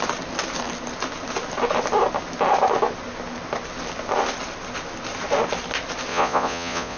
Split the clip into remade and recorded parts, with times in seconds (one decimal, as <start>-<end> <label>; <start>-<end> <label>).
0.0-6.1 recorded; 6.1-7.0 remade